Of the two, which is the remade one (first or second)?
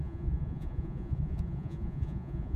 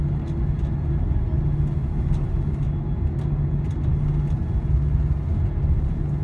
first